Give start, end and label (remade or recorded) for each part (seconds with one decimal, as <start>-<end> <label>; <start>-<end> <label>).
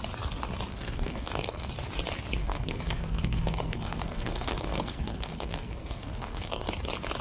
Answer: 0.0-0.7 recorded; 0.7-1.7 remade; 1.7-2.4 recorded; 2.4-6.7 remade; 6.7-7.2 recorded